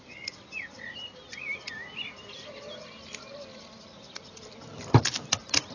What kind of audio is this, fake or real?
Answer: real